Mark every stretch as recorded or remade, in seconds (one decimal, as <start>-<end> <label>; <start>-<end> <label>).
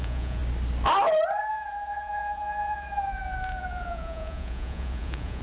0.0-0.4 remade; 0.4-1.5 recorded; 1.5-5.4 remade